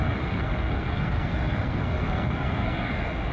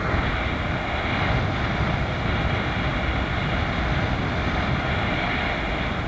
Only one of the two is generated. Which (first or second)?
first